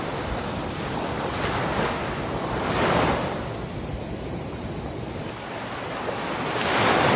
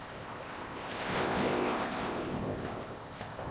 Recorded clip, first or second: first